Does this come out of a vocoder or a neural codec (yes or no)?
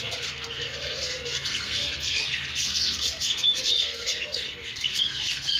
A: yes